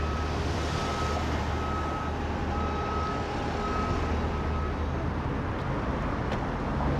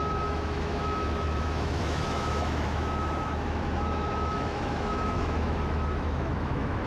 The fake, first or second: second